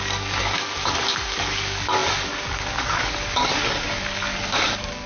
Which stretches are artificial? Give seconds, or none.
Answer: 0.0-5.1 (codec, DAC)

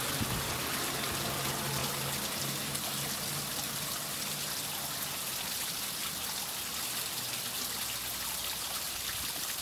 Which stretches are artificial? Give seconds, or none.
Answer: none

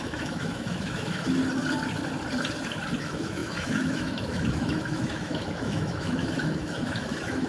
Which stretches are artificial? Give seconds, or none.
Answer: 0.0-1.4 (autoencoder, DAC-VAE); 3.0-7.5

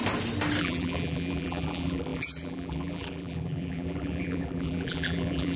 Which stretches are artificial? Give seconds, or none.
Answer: 0.6-5.6 (vocoder, BigVGAN v2)

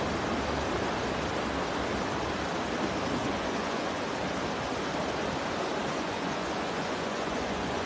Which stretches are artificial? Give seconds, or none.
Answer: 3.2-4.0 (vocoder, Vocos); 5.9-7.9